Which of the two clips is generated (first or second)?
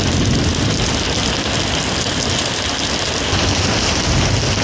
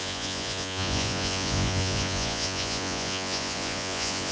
second